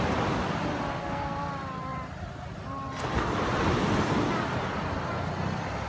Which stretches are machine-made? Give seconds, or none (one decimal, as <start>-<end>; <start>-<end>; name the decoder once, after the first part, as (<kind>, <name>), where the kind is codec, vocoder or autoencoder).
1.0-1.5 (codec, SNAC)